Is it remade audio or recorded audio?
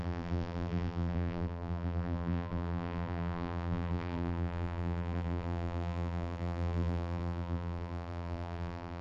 remade